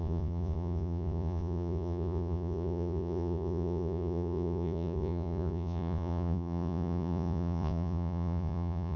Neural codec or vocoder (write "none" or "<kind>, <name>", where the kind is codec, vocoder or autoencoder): vocoder, Vocos